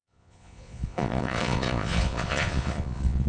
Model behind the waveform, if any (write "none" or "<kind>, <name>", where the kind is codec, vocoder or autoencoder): vocoder, Vocos